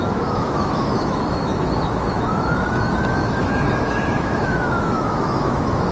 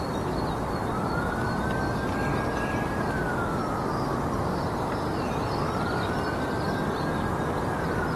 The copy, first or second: first